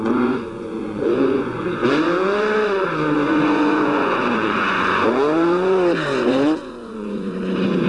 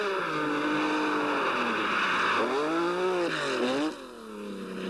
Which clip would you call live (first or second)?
second